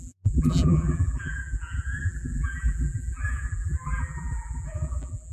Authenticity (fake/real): fake